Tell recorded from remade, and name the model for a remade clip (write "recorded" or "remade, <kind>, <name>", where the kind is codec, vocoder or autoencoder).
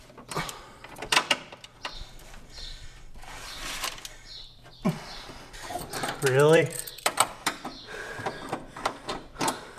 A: remade, vocoder, BigVGAN v2